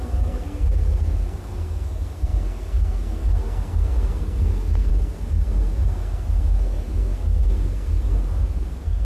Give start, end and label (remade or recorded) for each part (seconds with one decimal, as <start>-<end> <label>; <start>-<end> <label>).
0.0-9.0 remade